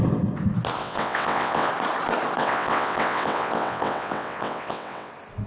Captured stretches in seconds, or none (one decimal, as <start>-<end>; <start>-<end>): 0.0-0.8; 1.7-2.4; 5.1-5.5